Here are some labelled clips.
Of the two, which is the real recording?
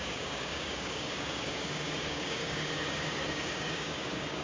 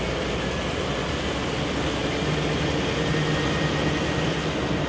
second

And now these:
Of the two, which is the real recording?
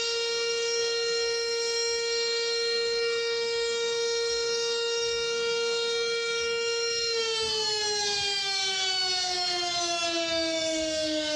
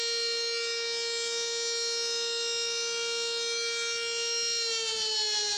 second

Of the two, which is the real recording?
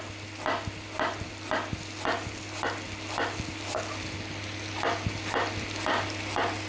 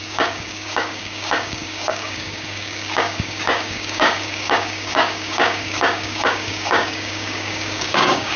first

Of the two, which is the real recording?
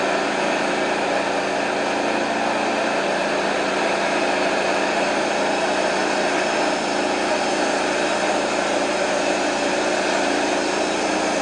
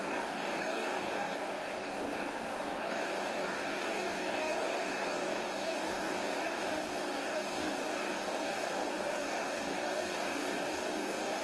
first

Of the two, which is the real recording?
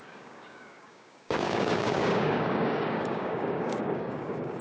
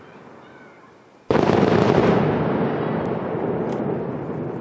second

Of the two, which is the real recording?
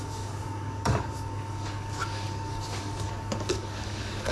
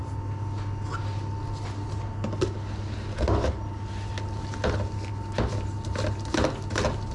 second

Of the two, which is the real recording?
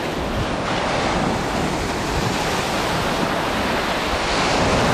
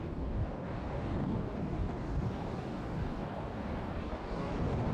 first